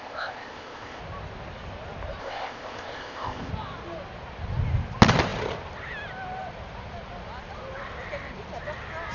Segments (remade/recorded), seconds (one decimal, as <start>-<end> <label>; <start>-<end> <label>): 0.0-1.0 remade; 1.0-2.2 recorded; 2.2-3.5 remade; 3.5-9.1 recorded